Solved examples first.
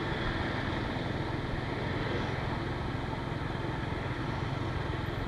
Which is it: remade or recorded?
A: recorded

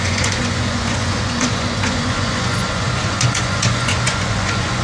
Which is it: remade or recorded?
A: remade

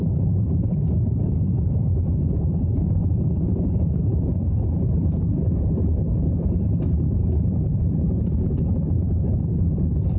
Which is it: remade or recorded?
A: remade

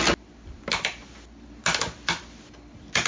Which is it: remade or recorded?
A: recorded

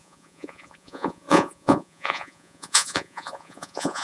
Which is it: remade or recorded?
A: remade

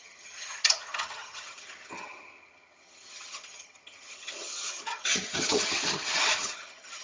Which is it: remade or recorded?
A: remade